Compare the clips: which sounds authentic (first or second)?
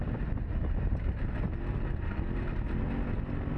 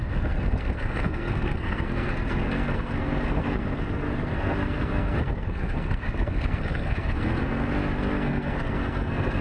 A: first